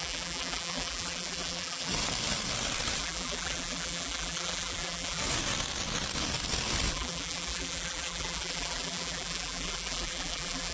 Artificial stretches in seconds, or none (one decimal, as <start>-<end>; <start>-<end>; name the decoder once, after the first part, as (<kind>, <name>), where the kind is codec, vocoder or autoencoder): 0.0-1.9 (vocoder, BigVGAN v2); 3.0-5.2; 6.9-10.7